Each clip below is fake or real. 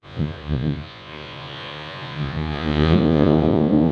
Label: fake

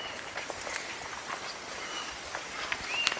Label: real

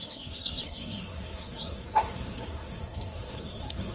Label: fake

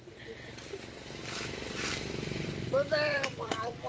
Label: fake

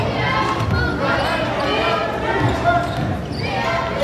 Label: real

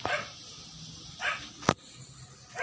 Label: real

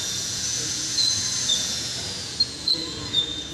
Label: fake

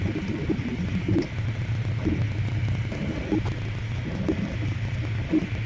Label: real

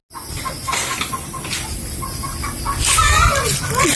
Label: real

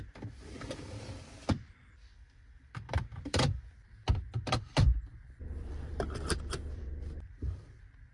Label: fake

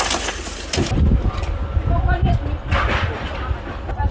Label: real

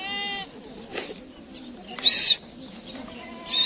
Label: real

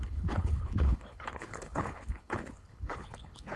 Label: fake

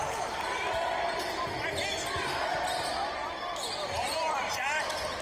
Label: real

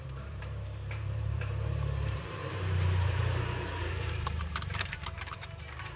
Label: fake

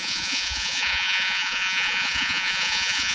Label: fake